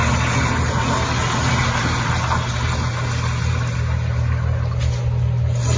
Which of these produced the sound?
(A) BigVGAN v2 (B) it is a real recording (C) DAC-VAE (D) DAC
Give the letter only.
B